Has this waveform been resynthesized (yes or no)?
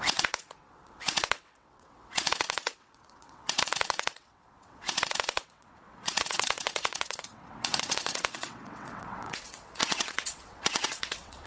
yes